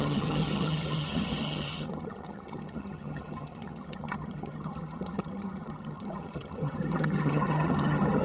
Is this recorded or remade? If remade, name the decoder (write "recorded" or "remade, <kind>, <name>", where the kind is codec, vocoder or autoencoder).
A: remade, vocoder, HiFi-GAN